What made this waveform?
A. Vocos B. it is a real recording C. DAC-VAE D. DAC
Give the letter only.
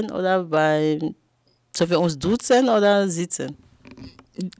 B